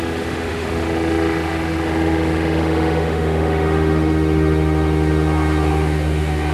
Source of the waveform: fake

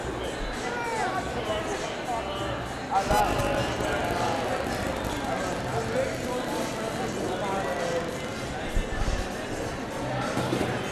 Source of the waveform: real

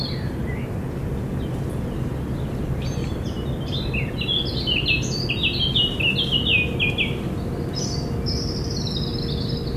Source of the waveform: real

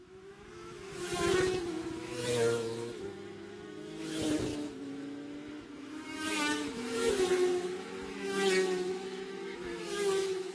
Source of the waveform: fake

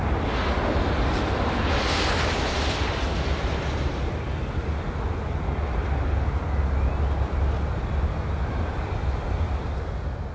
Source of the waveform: real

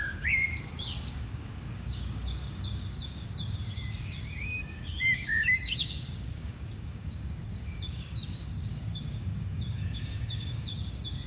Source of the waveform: fake